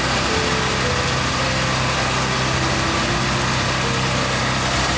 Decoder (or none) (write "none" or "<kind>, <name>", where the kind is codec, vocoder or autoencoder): none